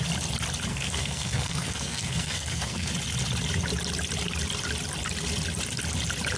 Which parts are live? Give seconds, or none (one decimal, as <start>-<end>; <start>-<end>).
0.0-0.7; 2.9-6.4

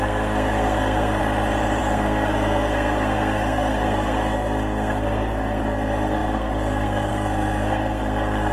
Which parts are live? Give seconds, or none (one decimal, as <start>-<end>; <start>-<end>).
1.2-1.8

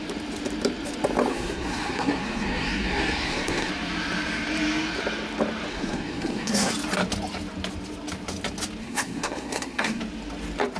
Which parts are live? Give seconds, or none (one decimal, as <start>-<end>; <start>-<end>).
0.0-1.3; 3.7-5.7; 6.7-8.8; 10.0-10.8